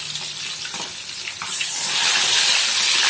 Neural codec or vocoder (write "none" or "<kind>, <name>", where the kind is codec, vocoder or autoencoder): none